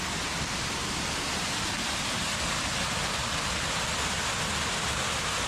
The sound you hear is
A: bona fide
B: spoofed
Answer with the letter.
A